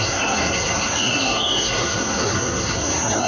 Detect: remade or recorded remade